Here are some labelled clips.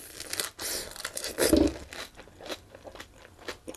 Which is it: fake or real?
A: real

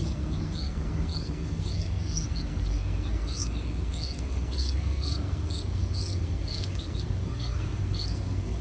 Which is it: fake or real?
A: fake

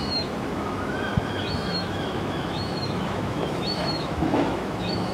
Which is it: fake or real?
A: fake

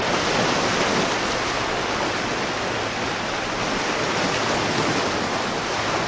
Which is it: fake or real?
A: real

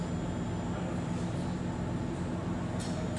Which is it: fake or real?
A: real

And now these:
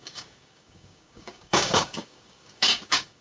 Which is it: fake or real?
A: fake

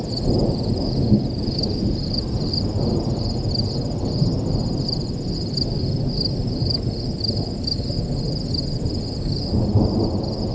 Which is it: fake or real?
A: real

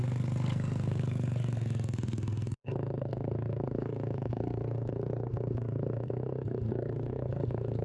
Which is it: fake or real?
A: fake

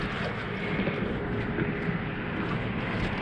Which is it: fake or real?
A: real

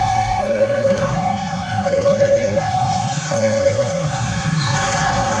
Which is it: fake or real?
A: fake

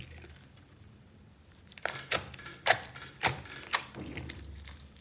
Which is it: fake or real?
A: fake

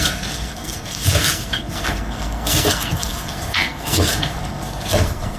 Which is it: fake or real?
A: fake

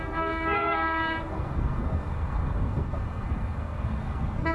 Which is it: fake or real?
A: fake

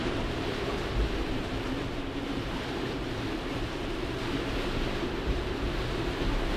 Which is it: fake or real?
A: fake